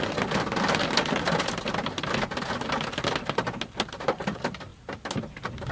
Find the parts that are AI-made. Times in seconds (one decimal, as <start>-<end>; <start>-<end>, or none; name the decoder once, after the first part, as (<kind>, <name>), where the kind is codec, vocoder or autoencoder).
none